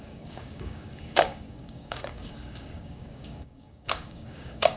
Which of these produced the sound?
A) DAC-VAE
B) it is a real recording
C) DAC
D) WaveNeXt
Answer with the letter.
C